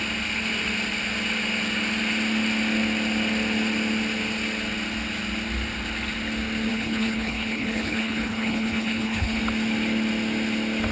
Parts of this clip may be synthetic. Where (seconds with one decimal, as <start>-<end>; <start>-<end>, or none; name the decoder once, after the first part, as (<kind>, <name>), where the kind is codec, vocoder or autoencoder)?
6.7-9.4 (codec, HILCodec)